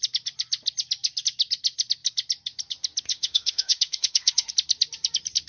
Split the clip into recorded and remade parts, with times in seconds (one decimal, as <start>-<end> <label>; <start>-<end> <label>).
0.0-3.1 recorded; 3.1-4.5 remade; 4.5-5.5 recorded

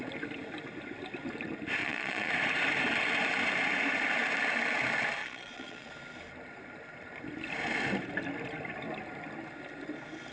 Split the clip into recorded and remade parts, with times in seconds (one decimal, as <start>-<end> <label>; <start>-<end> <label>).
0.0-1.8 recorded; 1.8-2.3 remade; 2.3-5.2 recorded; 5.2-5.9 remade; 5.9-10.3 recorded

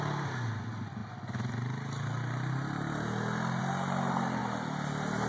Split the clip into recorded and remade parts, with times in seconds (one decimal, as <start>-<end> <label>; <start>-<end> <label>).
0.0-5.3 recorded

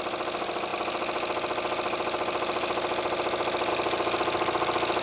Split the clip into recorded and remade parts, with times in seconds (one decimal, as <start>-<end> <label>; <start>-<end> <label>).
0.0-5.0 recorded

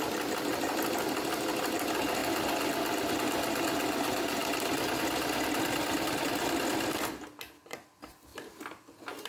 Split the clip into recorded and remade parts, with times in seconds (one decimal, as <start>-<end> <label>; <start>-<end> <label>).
0.0-9.3 recorded

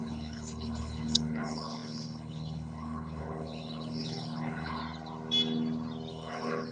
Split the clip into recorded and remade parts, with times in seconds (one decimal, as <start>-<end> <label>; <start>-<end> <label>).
0.0-4.8 remade; 4.8-6.1 recorded; 6.1-6.7 remade